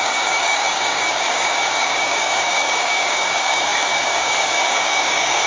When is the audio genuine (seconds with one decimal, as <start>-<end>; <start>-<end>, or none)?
none